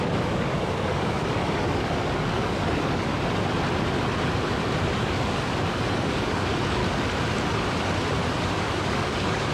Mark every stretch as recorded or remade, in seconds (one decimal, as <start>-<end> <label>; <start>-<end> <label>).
0.0-3.1 remade; 3.1-5.0 recorded; 5.0-6.8 remade; 6.8-8.6 recorded; 8.6-9.5 remade